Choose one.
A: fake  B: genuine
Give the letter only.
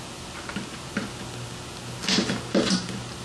B